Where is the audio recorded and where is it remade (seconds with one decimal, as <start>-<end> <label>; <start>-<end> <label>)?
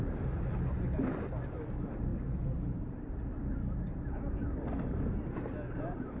0.0-6.2 recorded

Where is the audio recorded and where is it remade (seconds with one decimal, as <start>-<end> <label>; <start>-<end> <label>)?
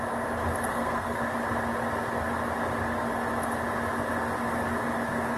0.0-0.7 recorded; 0.7-1.2 remade; 1.2-5.4 recorded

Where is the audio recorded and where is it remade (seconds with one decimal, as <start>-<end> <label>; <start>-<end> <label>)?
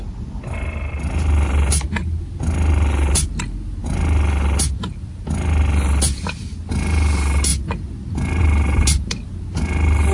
0.0-10.1 recorded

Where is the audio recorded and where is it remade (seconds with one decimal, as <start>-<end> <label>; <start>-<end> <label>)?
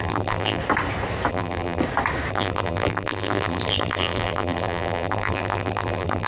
0.0-0.6 remade; 0.6-1.3 recorded; 1.3-1.8 remade; 1.8-2.3 recorded; 2.3-6.3 remade